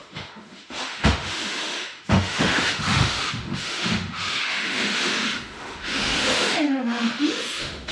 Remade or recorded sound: remade